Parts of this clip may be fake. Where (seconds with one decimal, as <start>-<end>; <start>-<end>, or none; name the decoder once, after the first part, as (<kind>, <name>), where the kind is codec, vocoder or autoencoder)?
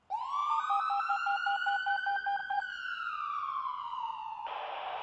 2.4-4.6 (vocoder, Vocos)